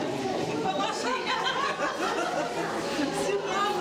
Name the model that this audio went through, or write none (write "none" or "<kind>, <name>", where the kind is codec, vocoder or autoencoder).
none